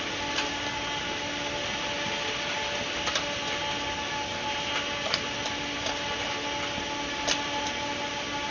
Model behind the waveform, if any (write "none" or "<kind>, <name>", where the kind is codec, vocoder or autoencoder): none